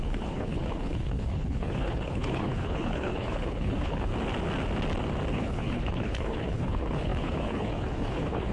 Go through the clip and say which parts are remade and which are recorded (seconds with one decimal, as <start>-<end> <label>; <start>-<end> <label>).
0.0-4.1 remade; 4.1-5.3 recorded; 5.3-8.5 remade